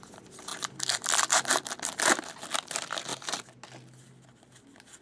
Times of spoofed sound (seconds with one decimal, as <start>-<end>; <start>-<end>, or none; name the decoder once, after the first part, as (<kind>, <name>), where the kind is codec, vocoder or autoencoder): none